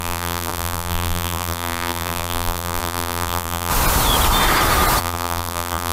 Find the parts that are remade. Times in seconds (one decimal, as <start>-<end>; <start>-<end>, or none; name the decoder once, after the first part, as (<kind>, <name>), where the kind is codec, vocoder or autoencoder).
0.0-3.7 (vocoder, BigVGAN v2); 5.0-5.9